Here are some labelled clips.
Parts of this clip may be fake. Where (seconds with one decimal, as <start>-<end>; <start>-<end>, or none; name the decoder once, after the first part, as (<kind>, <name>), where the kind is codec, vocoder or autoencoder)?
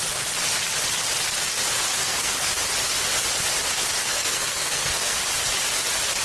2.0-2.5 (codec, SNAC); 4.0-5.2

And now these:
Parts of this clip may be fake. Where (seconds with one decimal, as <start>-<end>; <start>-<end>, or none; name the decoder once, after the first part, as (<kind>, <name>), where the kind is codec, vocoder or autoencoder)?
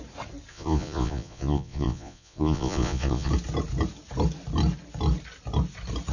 0.5-3.3 (vocoder, Vocos)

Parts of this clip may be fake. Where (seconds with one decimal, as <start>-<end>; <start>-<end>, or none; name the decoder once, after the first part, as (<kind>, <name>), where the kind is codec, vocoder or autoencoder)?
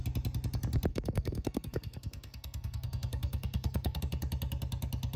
0.9-4.0 (codec, SNAC)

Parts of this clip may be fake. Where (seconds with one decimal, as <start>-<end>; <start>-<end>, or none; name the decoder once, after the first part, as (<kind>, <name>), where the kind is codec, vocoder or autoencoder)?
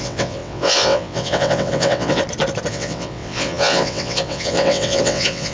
0.0-2.2 (vocoder, WaveNeXt); 2.7-5.5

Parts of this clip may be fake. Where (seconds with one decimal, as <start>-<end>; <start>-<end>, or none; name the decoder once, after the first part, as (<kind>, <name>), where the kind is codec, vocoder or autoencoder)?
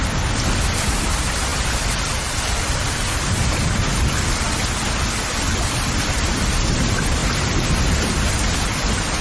none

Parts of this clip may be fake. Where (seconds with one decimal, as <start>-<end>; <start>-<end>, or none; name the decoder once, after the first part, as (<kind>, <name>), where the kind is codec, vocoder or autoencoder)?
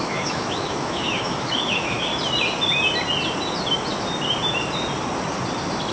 0.0-2.1 (autoencoder, DAC-VAE)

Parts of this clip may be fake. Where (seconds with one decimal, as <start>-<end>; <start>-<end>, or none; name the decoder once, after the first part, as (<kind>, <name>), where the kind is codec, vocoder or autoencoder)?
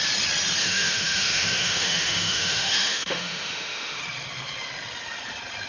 0.6-4.0 (autoencoder, DAC-VAE)